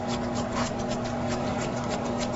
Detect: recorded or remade remade